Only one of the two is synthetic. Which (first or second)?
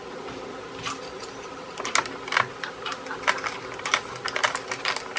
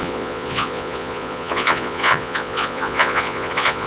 second